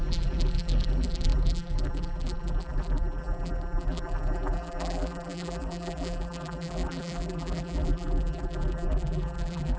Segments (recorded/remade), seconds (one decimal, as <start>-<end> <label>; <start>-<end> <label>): 0.0-9.8 remade

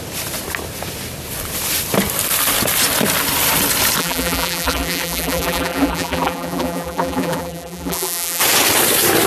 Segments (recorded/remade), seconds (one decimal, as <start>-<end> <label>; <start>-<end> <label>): 0.0-4.0 recorded; 4.0-8.4 remade; 8.4-9.3 recorded

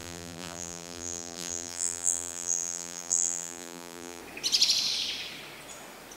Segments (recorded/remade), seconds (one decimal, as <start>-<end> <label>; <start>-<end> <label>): 0.0-4.2 remade; 4.2-6.2 recorded

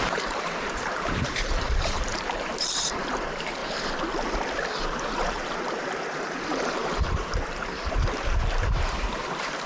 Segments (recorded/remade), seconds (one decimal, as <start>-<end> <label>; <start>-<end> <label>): 0.0-3.6 remade; 3.6-4.8 recorded; 4.8-9.7 remade

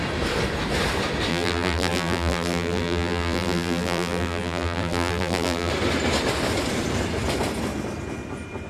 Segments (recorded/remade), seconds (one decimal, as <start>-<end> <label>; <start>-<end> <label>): 0.0-1.3 recorded; 1.3-5.7 remade; 5.7-8.7 recorded

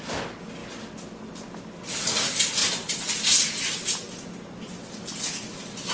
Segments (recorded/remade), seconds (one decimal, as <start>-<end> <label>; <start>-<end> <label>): 0.0-0.6 recorded; 0.6-2.2 remade; 2.2-5.9 recorded

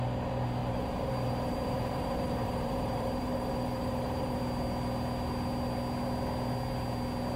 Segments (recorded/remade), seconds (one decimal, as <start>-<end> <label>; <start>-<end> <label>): 0.0-0.6 recorded; 0.6-4.4 remade; 4.4-7.4 recorded

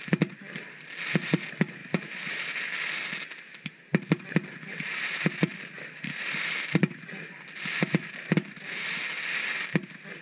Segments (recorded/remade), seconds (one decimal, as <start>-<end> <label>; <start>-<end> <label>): 0.0-1.8 recorded; 1.8-2.5 remade; 2.5-5.5 recorded; 5.5-7.1 remade; 7.1-10.2 recorded